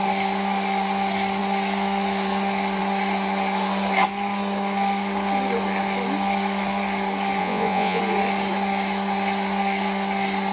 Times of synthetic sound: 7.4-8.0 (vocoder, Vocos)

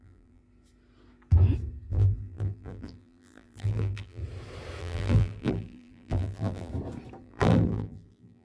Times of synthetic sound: 0.0-0.4 (vocoder, BigVGAN v2); 1.9-4.2; 4.8-6.7; 7.2-8.4

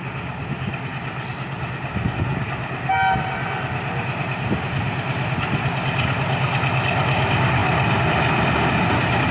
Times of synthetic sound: none

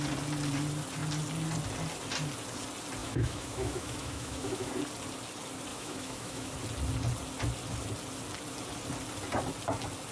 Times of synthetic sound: 3.0-4.7 (autoencoder, DAC-VAE); 5.7-6.6

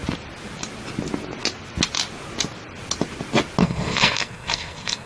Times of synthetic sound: 3.6-5.1 (codec, SNAC)

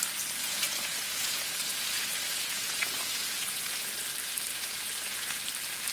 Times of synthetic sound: 0.4-3.9 (vocoder, Vocos); 4.5-5.4

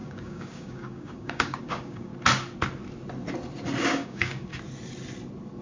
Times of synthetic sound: 0.0-2.1 (codec, DAC); 3.8-4.5